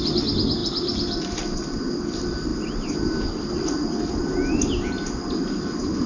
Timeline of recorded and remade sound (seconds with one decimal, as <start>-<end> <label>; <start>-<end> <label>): 0.0-6.1 recorded